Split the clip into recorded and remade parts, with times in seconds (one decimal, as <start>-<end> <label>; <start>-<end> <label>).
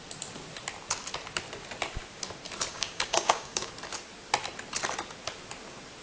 0.0-2.7 recorded; 2.7-3.7 remade; 3.7-6.0 recorded